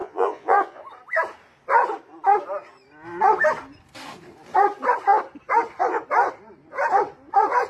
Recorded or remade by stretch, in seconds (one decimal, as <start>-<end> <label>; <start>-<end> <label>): 0.0-0.8 remade; 0.8-7.7 recorded

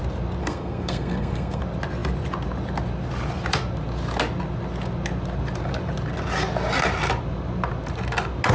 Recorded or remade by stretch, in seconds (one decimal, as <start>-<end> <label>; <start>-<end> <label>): 0.0-0.4 recorded; 0.4-1.6 remade; 1.6-8.5 recorded